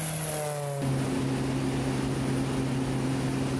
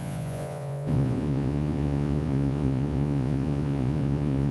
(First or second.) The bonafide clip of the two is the first